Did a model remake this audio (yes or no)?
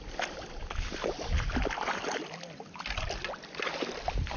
no